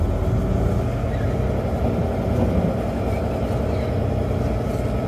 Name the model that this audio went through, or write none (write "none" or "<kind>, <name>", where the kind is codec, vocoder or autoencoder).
none